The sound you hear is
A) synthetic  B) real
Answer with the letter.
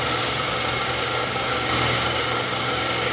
A